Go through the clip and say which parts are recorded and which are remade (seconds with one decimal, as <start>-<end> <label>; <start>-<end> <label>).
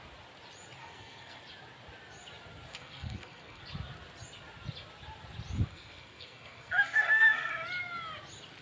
0.0-0.8 recorded; 0.8-1.4 remade; 1.4-2.7 recorded; 2.7-3.6 remade; 3.6-5.7 recorded; 5.7-7.5 remade; 7.5-8.6 recorded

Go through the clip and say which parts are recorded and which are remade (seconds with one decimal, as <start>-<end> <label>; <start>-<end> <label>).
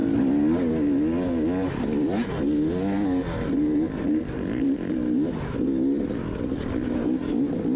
0.0-7.8 recorded